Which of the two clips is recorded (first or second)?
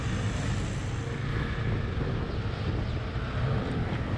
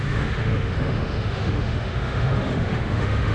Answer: first